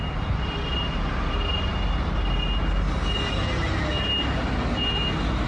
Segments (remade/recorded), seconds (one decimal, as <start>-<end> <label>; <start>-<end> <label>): 0.0-5.5 recorded